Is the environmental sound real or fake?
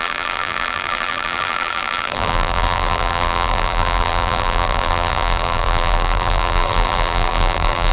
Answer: fake